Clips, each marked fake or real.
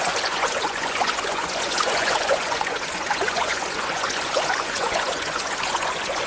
fake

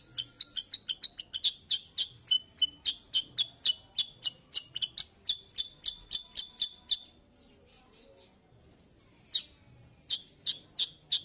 real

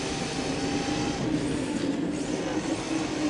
real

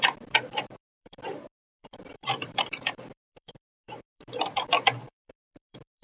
fake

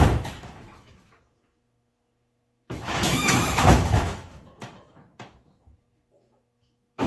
fake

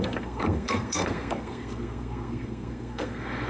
fake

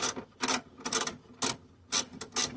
real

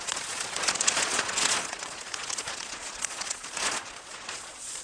fake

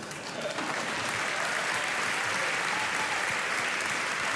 real